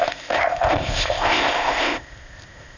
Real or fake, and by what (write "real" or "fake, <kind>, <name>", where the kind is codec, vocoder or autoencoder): fake, codec, ZipCodec